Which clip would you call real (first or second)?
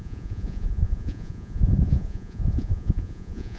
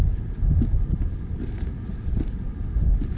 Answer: second